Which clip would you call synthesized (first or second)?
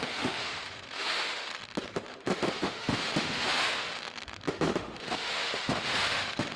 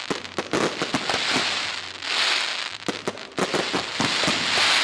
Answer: first